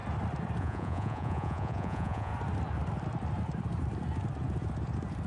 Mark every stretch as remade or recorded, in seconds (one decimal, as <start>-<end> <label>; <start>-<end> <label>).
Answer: 0.0-0.6 recorded; 0.6-2.3 remade; 2.3-5.3 recorded